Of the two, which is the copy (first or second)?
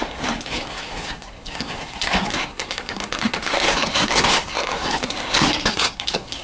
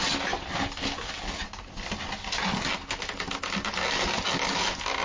first